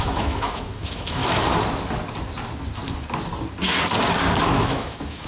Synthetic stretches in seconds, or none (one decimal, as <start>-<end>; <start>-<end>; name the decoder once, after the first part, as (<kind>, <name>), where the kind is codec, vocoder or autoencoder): 0.0-1.2 (autoencoder, DAC-VAE); 4.4-5.3

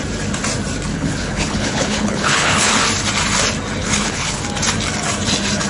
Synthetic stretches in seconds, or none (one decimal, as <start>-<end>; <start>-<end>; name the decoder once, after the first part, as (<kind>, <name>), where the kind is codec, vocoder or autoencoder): 0.9-2.8 (codec, HILCodec); 3.8-4.4

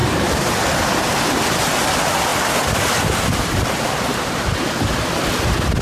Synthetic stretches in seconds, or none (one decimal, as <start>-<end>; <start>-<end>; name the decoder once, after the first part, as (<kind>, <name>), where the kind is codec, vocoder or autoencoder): 0.0-0.6 (vocoder, BigVGAN v2)

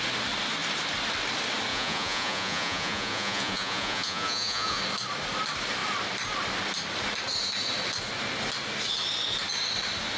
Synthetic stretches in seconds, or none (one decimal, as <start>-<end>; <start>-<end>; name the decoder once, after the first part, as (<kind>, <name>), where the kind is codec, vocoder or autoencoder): 1.7-4.8 (vocoder, Vocos)

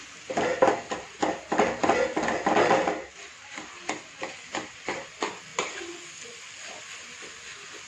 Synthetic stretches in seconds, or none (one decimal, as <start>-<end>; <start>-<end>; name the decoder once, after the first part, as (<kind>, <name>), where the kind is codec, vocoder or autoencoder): none

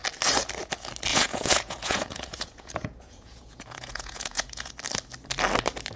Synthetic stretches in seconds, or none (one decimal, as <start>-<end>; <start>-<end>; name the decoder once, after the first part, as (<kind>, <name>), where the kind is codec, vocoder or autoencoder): 1.1-4.7 (vocoder, Vocos)

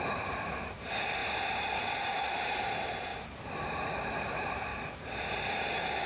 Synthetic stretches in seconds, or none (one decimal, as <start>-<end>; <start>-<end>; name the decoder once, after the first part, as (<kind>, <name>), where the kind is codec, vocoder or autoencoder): 0.0-3.1 (vocoder, BigVGAN v2); 3.7-4.7; 5.3-6.1

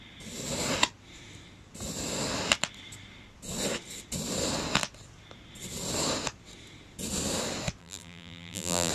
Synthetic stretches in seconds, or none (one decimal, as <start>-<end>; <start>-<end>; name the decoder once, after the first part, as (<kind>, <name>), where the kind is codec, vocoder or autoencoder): 7.8-8.9 (vocoder, BigVGAN v2)